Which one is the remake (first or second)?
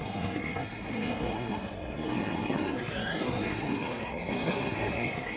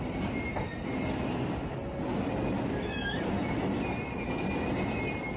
first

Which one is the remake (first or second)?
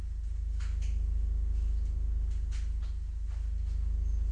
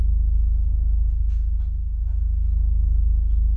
second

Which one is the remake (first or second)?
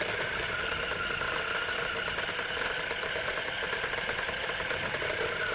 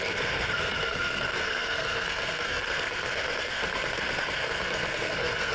second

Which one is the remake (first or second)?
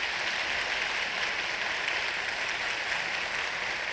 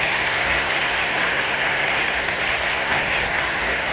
second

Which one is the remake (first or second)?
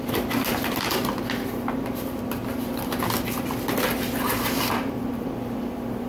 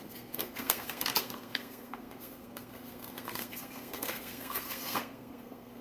second